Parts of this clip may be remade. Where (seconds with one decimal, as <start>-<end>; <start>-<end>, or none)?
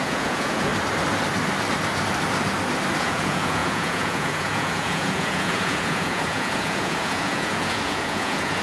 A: 0.0-0.7; 3.0-8.6